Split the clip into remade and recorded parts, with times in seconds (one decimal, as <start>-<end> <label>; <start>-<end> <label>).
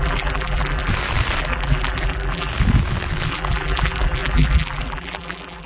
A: 0.0-0.9 remade; 0.9-1.4 recorded; 1.4-2.5 remade; 2.5-3.3 recorded; 3.3-5.7 remade